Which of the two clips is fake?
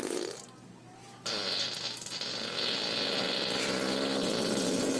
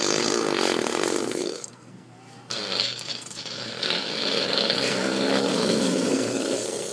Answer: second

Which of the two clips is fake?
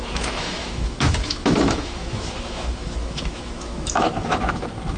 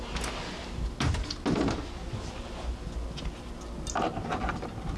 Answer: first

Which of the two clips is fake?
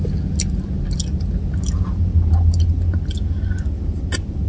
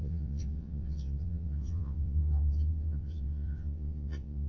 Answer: second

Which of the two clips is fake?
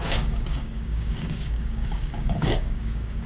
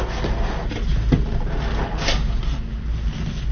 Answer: first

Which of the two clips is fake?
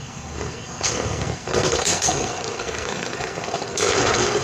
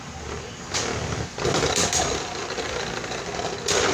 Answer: first